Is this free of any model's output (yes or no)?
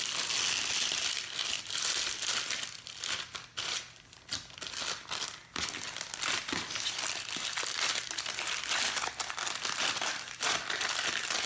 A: yes